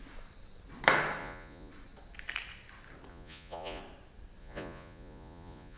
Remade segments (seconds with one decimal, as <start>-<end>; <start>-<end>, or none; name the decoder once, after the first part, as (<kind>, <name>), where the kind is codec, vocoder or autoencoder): 1.2-1.7 (vocoder, Vocos); 3.1-3.8; 4.4-5.8